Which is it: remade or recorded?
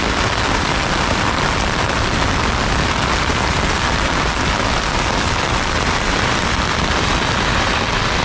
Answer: recorded